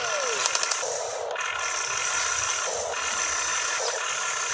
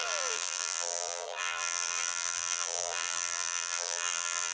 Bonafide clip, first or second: first